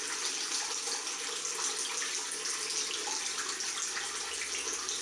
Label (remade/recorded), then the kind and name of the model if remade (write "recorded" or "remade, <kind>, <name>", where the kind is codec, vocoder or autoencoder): recorded